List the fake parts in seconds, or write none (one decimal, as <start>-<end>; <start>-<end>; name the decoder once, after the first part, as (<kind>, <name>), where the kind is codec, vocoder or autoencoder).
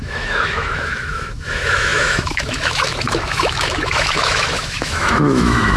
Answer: 0.0-5.8 (autoencoder, DAC-VAE)